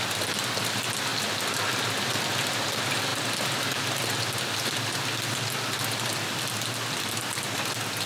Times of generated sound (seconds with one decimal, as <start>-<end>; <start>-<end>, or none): none